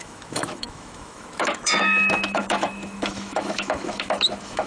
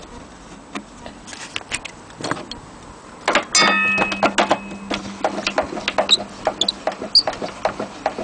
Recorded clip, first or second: second